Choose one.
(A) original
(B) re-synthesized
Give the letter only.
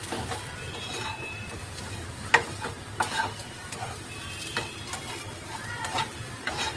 B